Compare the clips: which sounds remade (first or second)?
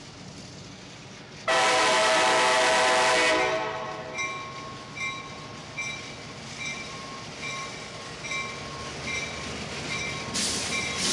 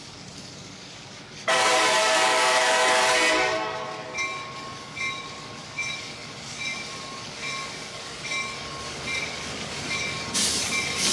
second